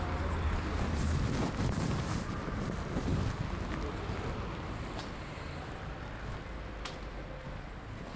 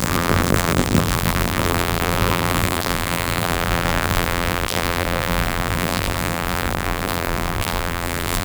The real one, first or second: first